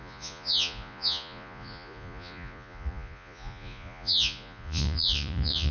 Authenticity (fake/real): fake